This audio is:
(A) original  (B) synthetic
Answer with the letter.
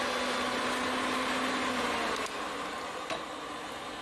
A